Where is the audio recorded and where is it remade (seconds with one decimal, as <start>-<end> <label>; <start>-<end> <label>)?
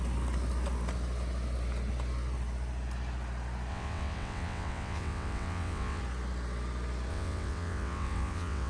0.0-3.7 recorded; 3.7-6.0 remade; 6.0-7.1 recorded; 7.1-8.7 remade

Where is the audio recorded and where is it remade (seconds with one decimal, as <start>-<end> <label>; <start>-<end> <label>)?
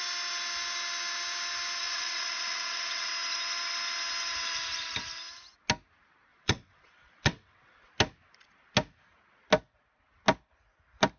0.0-1.8 recorded; 1.8-3.1 remade; 3.1-6.3 recorded; 6.3-7.9 remade; 7.9-11.2 recorded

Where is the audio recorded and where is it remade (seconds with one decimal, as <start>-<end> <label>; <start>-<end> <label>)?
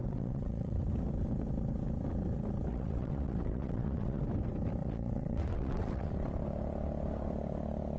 0.0-0.9 remade; 0.9-2.7 recorded; 2.7-4.2 remade; 4.2-4.8 recorded; 4.8-6.1 remade; 6.1-8.0 recorded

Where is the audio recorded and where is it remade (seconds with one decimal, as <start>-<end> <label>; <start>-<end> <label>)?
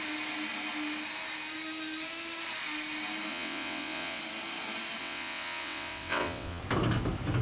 0.0-3.3 recorded; 3.3-4.2 remade; 4.2-5.0 recorded; 5.0-6.6 remade; 6.6-7.4 recorded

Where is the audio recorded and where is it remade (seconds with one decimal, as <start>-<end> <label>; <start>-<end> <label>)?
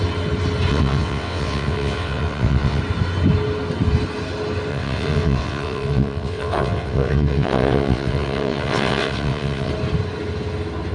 0.0-0.7 recorded; 0.7-2.8 remade; 2.8-4.7 recorded; 4.7-9.7 remade; 9.7-10.9 recorded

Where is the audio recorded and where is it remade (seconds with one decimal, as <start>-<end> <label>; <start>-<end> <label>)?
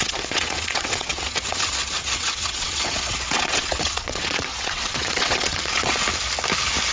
0.0-6.0 remade; 6.0-6.9 recorded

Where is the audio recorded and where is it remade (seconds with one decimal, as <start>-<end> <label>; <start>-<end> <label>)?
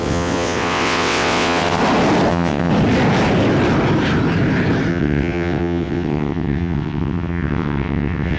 0.0-1.8 remade; 1.8-2.3 recorded; 2.3-2.7 remade; 2.7-4.9 recorded; 4.9-8.4 remade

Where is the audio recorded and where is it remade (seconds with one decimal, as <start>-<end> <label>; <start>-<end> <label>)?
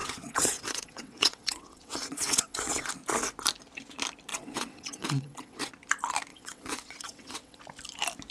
0.0-2.9 remade; 2.9-4.3 recorded; 4.3-5.7 remade; 5.7-6.3 recorded; 6.3-7.6 remade; 7.6-8.3 recorded